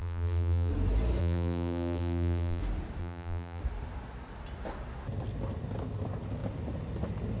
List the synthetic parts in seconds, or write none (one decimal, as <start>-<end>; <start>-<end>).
0.0-0.7; 1.2-2.6; 3.0-3.6